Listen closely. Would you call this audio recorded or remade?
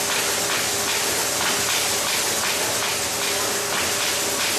recorded